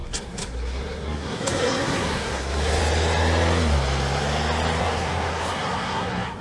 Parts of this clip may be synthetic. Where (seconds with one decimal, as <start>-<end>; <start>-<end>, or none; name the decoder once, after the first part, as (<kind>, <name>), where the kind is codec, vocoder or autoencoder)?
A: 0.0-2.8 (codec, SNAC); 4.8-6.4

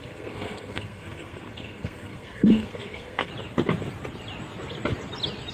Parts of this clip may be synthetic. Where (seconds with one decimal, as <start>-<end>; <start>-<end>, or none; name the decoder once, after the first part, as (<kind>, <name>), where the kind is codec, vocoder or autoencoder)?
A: 0.0-3.3 (codec, SNAC)

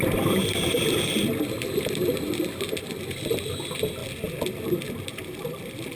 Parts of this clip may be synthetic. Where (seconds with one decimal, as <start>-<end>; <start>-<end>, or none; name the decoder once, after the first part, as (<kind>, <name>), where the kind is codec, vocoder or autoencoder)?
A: none